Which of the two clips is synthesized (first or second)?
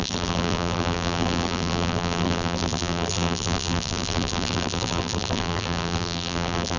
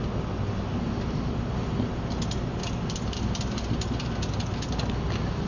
first